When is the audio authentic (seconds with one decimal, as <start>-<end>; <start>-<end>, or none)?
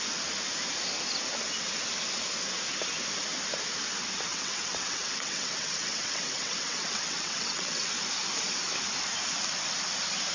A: 0.0-4.3; 7.9-10.3